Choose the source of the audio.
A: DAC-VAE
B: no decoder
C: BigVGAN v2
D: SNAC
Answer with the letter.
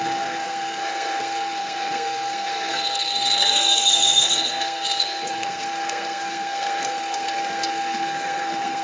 D